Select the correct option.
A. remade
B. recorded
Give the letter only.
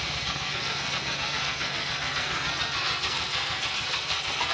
A